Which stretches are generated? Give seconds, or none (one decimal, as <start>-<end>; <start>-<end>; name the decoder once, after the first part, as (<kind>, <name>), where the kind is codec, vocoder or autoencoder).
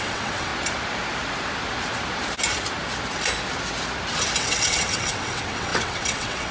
0.0-0.5 (vocoder, WaveNeXt); 4.4-6.5